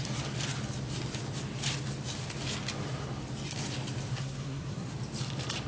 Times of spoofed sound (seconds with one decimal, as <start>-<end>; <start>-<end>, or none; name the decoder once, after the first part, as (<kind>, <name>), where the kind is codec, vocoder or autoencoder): 4.1-4.9 (codec, SNAC)